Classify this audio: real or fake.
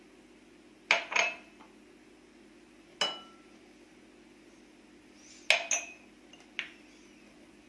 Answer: real